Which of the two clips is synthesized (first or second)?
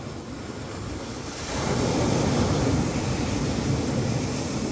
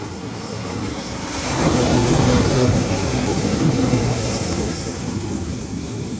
second